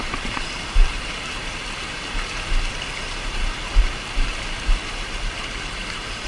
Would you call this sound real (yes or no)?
no